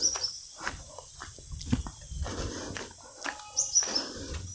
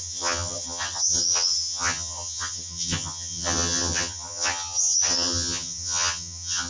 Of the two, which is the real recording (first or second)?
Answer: first